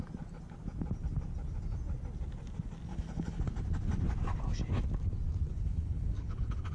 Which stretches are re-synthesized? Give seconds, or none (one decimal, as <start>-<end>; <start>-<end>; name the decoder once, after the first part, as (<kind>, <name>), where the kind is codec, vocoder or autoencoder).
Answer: 2.9-3.4 (codec, HILCodec); 5.5-6.7